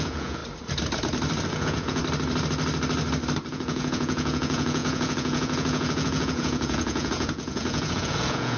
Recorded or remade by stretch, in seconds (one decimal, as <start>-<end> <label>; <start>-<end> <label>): 0.0-0.4 remade; 0.4-1.5 recorded; 1.5-2.0 remade; 2.0-3.5 recorded; 3.5-8.6 remade